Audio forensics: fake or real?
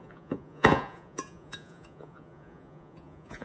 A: fake